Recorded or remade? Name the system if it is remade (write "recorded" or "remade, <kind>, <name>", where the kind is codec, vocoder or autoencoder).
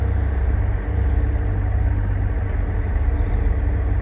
recorded